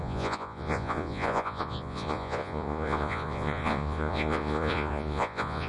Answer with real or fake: fake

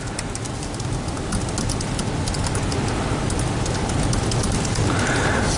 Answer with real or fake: real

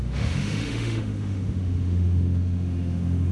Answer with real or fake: fake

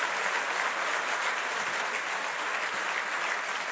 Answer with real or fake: real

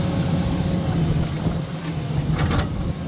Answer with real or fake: real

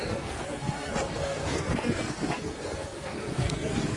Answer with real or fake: fake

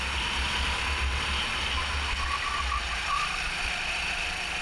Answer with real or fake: real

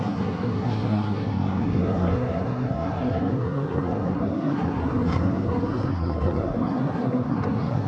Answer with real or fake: fake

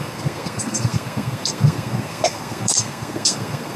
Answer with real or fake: fake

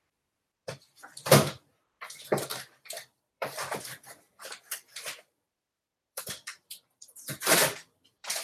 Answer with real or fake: fake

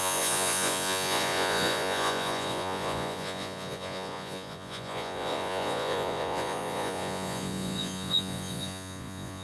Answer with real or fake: fake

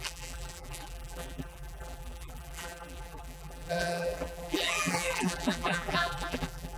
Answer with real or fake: fake